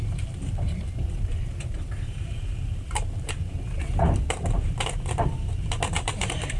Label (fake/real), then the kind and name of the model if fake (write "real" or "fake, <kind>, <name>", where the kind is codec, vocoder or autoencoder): fake, vocoder, BigVGAN v2